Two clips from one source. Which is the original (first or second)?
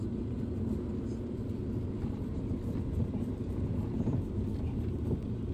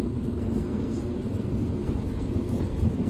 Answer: first